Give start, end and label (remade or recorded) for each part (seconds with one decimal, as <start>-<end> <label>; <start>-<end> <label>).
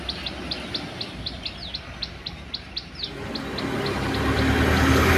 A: 0.0-1.7 recorded; 1.7-2.5 remade; 2.5-5.2 recorded